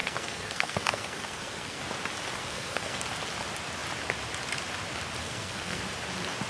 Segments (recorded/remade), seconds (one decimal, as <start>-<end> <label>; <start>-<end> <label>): 0.0-1.8 remade; 1.8-2.4 recorded; 2.4-3.0 remade; 3.0-5.2 recorded; 5.2-5.8 remade; 5.8-6.5 recorded